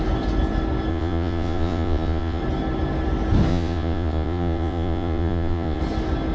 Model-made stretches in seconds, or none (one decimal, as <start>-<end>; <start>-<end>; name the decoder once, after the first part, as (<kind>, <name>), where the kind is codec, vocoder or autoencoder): 0.9-2.4 (vocoder, Vocos); 3.5-5.8

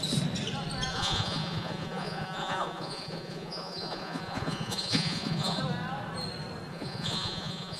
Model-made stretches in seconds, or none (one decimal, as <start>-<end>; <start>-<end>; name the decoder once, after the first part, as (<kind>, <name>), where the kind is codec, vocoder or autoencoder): 0.9-5.6 (vocoder, Vocos); 6.7-7.8

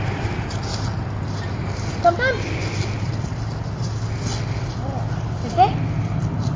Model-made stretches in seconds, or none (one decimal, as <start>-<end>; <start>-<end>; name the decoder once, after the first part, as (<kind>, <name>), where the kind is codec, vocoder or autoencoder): none

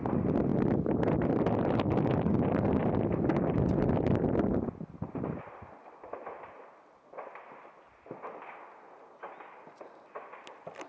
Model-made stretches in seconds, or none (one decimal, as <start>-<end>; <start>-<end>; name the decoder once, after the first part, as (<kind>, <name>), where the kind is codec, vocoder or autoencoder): none